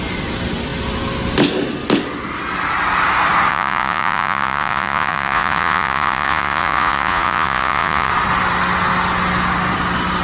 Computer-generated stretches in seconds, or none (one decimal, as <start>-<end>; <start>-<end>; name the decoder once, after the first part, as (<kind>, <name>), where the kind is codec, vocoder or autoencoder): 3.5-8.1 (vocoder, Vocos)